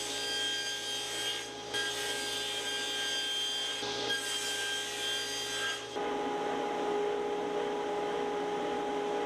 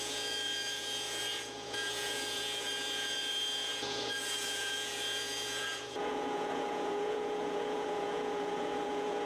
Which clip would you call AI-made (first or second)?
second